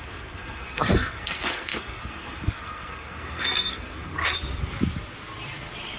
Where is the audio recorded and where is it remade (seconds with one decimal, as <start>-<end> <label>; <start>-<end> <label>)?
0.0-4.2 remade; 4.2-6.0 recorded